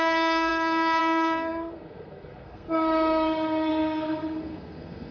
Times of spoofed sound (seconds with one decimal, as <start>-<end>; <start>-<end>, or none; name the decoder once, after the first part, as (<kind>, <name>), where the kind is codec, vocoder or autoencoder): 0.0-5.1 (codec, SNAC)